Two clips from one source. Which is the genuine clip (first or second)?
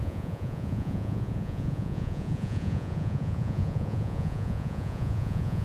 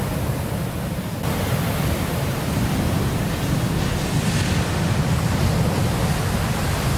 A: second